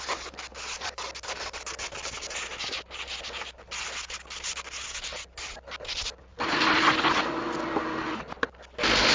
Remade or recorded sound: recorded